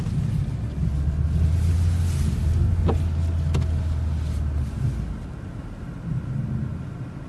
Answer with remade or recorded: recorded